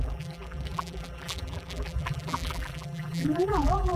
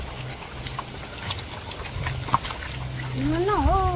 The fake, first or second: first